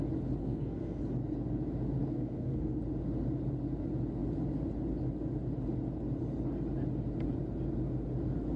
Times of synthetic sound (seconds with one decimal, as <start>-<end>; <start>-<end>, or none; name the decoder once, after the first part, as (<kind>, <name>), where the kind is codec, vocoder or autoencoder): 0.4-1.0 (codec, SNAC); 2.0-2.8